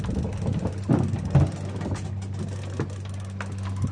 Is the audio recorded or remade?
recorded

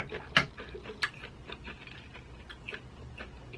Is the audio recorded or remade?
recorded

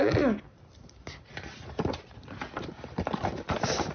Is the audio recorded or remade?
recorded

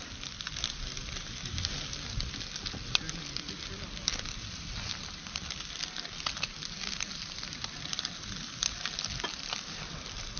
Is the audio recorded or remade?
remade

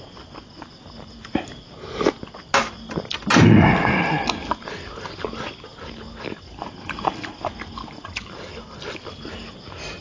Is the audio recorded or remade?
recorded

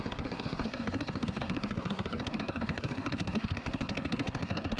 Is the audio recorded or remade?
remade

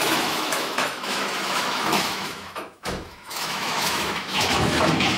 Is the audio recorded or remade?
remade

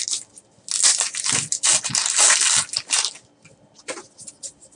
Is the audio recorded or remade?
recorded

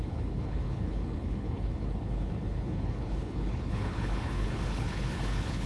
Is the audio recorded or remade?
remade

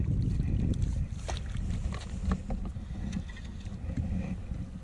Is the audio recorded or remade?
recorded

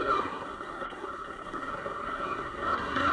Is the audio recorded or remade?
remade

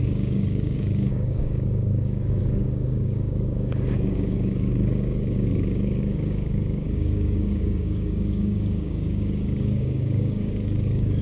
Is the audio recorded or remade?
remade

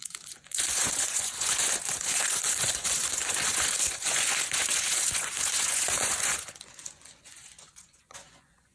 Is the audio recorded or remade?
remade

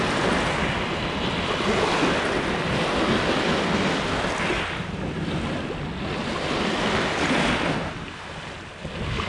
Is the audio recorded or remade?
recorded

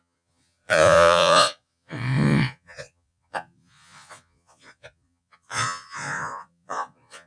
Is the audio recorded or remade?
remade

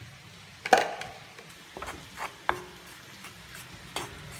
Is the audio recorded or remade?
recorded